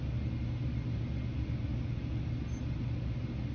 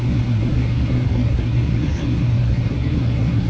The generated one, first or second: second